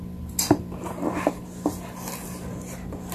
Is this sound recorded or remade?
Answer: recorded